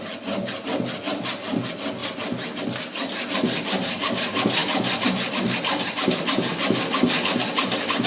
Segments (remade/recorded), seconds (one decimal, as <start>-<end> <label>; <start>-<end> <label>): 0.0-8.1 recorded